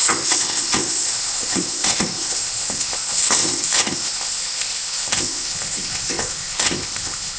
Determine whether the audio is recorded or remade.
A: remade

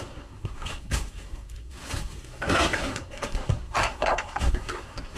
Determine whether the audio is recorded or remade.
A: remade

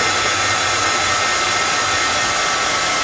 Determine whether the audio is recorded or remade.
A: recorded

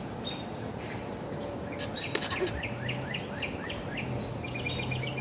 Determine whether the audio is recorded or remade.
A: recorded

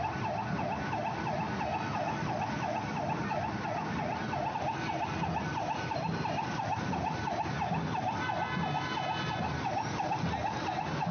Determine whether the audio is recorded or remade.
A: recorded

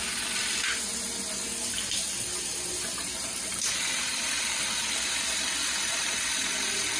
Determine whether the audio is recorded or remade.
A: recorded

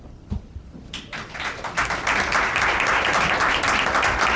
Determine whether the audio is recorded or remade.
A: recorded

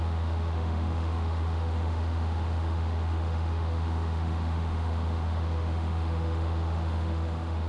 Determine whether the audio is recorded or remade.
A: remade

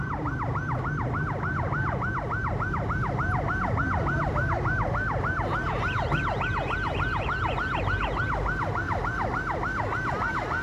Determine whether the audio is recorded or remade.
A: recorded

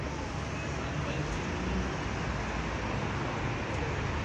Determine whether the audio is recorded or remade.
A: recorded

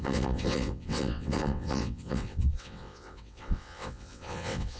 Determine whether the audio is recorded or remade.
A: remade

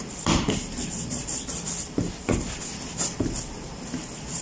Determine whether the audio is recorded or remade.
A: remade